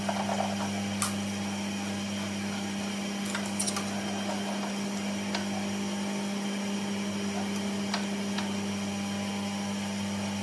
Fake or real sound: real